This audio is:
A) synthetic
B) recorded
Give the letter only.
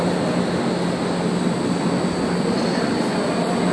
B